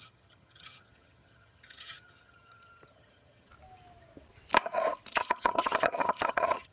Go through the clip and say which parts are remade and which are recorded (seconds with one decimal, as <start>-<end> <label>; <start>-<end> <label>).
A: 0.0-3.5 remade; 3.5-5.1 recorded; 5.1-6.7 remade